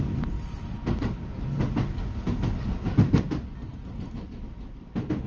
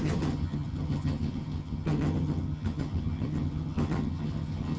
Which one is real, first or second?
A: first